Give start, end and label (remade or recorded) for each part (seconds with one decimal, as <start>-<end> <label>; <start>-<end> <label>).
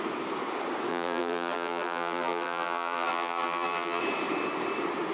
0.0-0.9 recorded; 0.9-4.0 remade; 4.0-5.1 recorded